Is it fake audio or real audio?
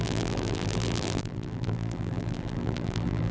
fake